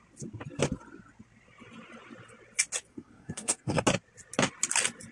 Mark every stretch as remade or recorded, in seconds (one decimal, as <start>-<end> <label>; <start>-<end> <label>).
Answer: 0.0-2.9 recorded; 2.9-3.8 remade; 3.8-5.1 recorded